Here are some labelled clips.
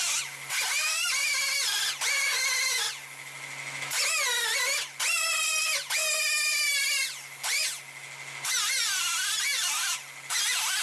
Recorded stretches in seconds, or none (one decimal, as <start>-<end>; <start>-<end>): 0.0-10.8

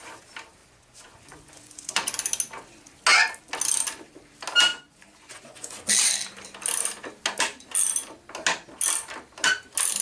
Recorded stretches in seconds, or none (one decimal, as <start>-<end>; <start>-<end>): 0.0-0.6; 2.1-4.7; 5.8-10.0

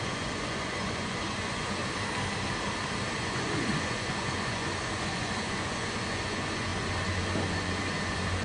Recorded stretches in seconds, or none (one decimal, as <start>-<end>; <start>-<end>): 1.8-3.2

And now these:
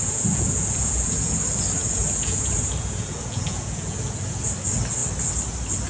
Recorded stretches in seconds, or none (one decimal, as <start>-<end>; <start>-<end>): 1.4-1.8; 4.4-5.9

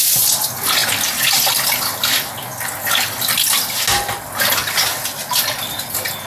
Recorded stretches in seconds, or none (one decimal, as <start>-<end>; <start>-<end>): 0.0-6.3